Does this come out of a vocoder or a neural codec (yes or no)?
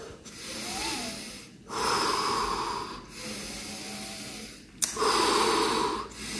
no